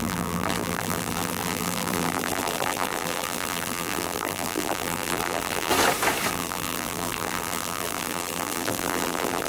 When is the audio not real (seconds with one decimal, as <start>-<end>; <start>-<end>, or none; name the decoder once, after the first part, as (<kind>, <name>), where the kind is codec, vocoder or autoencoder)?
0.0-5.7 (vocoder, BigVGAN v2); 6.3-9.5